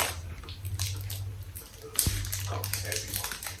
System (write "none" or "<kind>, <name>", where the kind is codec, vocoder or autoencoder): none